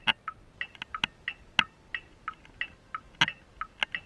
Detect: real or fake real